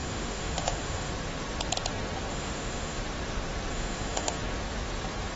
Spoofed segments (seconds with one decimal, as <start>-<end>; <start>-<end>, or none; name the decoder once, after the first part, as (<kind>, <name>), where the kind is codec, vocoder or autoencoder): 0.0-1.1 (autoencoder, DAC-VAE); 2.3-3.0; 3.7-4.4